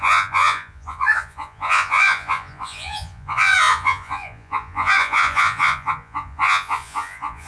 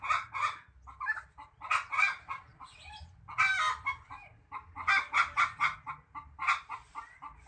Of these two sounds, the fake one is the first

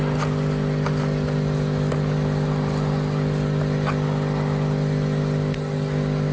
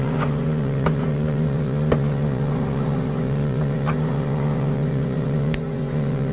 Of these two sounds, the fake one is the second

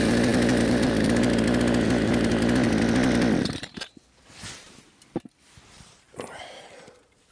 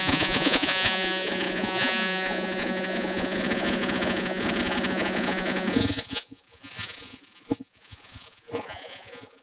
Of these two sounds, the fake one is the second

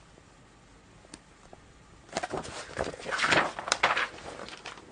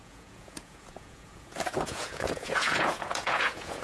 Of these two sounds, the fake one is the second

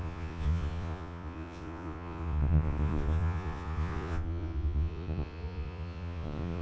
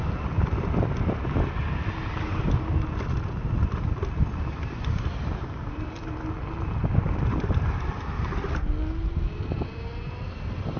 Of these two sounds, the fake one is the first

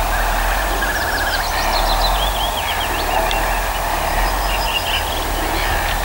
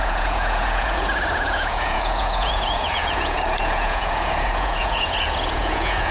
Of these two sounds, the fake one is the second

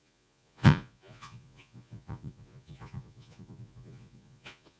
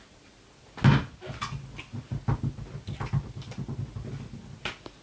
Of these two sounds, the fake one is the first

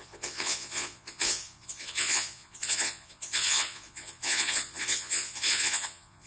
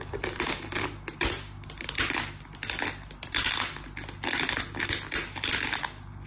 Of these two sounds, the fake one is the first